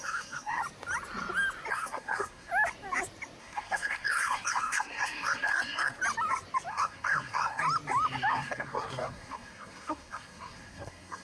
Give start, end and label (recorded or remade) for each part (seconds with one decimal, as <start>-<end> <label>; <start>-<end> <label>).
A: 0.0-0.6 remade; 0.6-1.7 recorded; 1.7-2.5 remade; 2.5-3.4 recorded; 3.4-6.0 remade; 6.0-6.7 recorded; 6.7-7.6 remade; 7.6-8.3 recorded; 8.3-11.2 remade